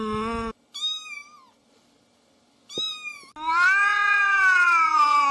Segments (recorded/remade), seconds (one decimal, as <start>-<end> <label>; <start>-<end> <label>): 0.0-3.8 recorded; 3.8-5.3 remade